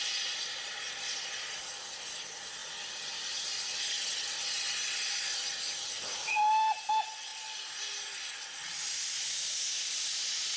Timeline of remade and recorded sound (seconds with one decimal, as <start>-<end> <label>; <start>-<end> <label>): 0.0-10.6 recorded